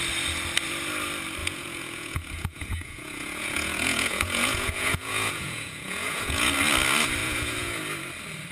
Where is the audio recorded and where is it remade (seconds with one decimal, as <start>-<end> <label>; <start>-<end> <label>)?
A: 0.0-1.4 recorded; 1.4-6.5 remade; 6.5-7.2 recorded; 7.2-7.8 remade; 7.8-8.5 recorded